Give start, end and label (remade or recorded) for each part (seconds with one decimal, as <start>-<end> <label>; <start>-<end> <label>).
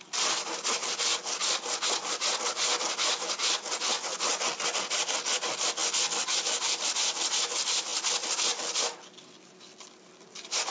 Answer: 0.0-10.7 recorded